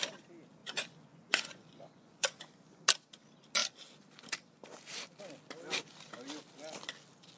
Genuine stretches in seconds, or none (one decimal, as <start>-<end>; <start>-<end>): 0.0-0.6; 2.8-7.4